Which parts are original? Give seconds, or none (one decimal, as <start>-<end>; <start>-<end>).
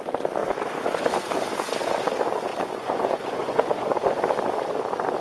0.0-2.5; 4.2-5.2